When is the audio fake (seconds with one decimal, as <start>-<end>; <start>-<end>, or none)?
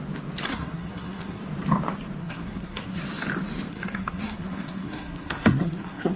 0.5-1.4; 2.2-3.0; 3.7-6.2